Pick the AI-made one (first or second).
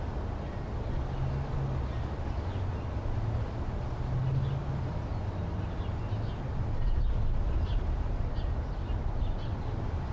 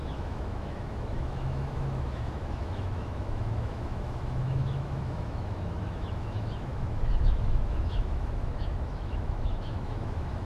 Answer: second